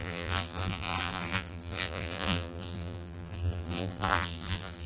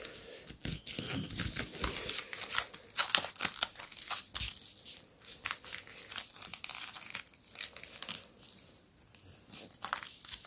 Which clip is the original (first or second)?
second